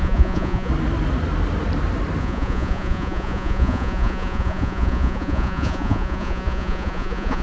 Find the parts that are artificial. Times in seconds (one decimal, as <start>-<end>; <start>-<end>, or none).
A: 0.0-0.7; 2.2-7.4